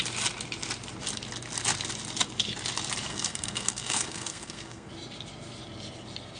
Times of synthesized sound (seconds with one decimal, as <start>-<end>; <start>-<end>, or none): 3.1-4.9